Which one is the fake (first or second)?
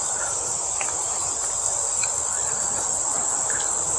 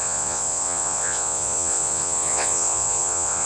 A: second